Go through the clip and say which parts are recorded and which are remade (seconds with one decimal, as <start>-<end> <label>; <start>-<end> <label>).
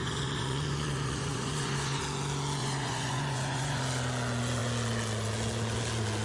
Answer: 0.0-2.0 remade; 2.0-2.6 recorded; 2.6-3.8 remade; 3.8-6.2 recorded